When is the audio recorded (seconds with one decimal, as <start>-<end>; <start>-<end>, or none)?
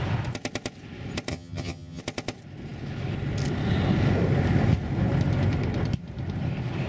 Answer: 0.0-1.3; 2.0-6.9